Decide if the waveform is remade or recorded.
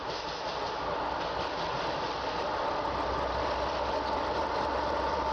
recorded